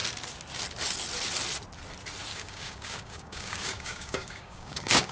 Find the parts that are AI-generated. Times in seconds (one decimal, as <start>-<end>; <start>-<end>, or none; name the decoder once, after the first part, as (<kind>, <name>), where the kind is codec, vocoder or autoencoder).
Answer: 2.3-5.1 (codec, DAC)